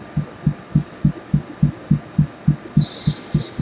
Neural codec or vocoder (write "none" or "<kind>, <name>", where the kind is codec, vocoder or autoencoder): none